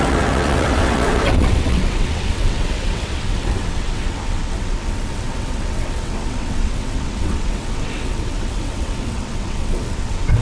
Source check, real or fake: fake